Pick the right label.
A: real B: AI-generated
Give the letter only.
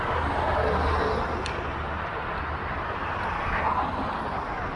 A